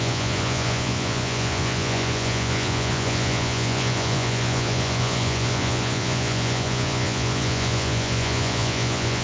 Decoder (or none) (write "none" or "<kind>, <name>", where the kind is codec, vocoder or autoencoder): vocoder, Vocos